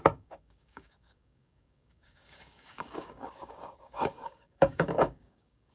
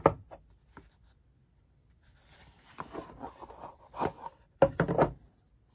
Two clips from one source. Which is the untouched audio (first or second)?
second